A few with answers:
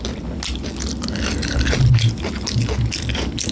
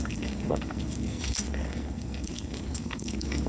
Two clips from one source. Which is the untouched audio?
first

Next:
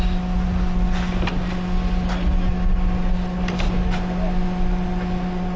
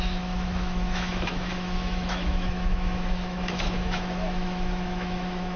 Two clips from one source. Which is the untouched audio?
first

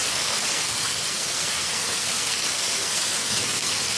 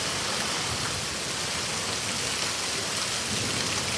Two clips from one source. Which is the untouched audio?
second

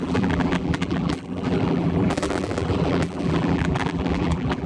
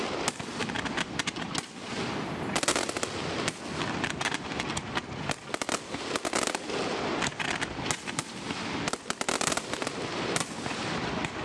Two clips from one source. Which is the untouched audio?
second